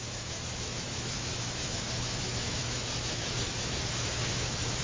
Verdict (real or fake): fake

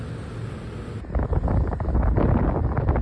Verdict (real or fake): real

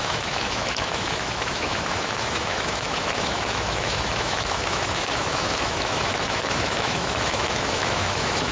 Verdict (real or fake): fake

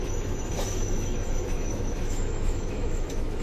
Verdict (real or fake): fake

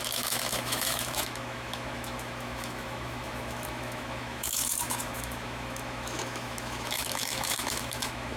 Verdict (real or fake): fake